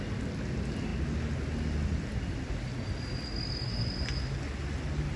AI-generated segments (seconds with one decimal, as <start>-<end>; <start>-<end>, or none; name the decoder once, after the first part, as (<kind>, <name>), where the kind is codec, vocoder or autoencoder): none